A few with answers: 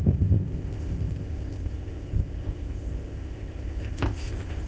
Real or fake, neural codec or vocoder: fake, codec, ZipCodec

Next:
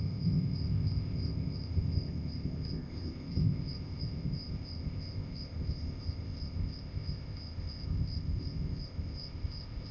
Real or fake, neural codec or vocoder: fake, codec, ZipCodec